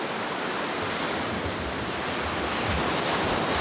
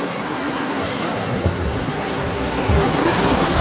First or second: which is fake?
second